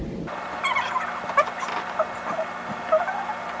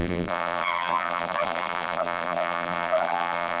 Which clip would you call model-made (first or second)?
second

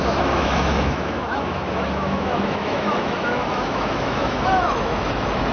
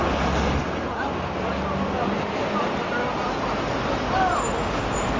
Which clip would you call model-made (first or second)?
first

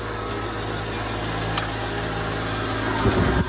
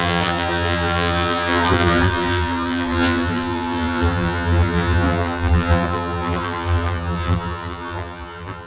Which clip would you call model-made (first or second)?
second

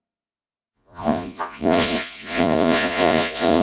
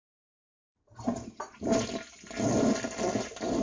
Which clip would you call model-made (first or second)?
first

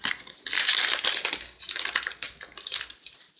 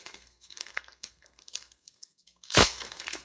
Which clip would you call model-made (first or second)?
second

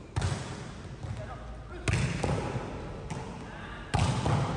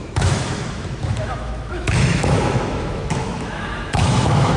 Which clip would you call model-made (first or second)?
second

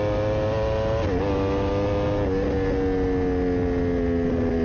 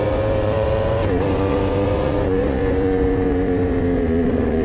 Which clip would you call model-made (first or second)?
second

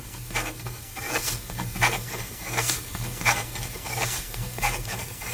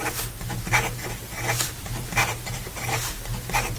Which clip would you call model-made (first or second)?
first